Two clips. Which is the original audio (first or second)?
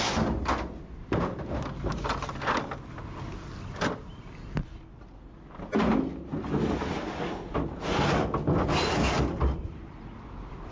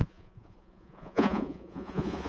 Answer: first